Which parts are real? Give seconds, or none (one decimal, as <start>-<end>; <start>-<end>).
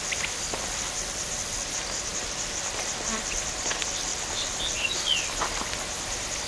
0.0-6.5